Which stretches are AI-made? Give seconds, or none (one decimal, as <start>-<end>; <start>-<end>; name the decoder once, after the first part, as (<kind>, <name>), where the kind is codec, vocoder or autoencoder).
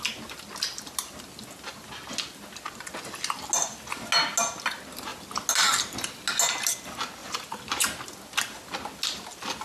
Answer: none